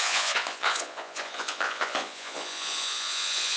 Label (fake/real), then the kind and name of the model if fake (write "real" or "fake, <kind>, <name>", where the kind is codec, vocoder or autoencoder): fake, vocoder, Vocos